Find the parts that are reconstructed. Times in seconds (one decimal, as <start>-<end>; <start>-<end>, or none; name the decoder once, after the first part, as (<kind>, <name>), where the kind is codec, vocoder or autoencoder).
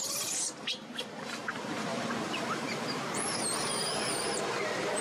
1.9-5.0 (vocoder, BigVGAN v2)